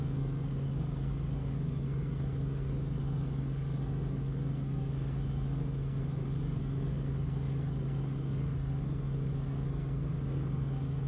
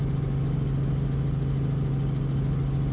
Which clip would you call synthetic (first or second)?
first